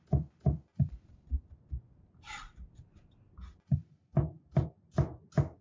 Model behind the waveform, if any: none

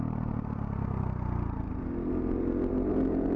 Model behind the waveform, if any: none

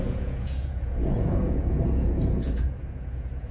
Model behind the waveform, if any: vocoder, Vocos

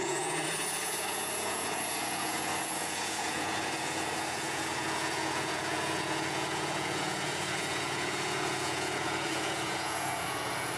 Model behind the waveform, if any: vocoder, Vocos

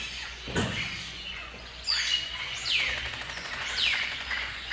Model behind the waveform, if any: vocoder, Vocos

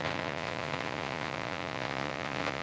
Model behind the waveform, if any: vocoder, Vocos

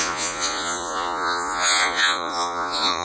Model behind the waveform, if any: vocoder, Vocos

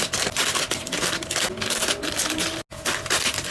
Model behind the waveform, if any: none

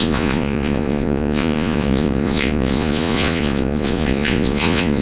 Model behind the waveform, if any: vocoder, Vocos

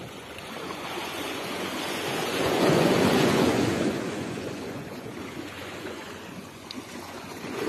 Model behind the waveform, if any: vocoder, Vocos